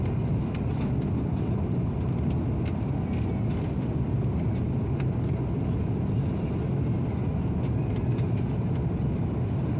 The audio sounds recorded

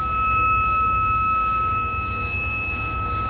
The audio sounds remade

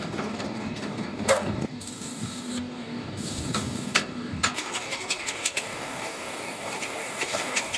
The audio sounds remade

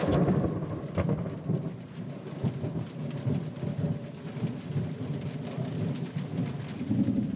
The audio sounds recorded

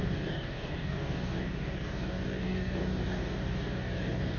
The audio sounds remade